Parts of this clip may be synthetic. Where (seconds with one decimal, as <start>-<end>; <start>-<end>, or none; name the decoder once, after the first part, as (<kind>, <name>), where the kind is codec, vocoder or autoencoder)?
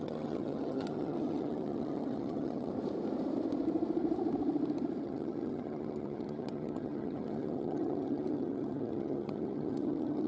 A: 0.0-2.7 (vocoder, HiFi-GAN); 5.0-10.3